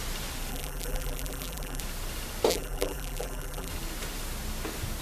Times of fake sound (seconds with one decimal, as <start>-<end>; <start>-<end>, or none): 0.5-1.8; 2.5-3.7